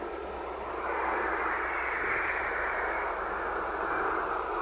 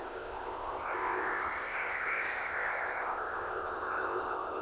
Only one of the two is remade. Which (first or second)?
second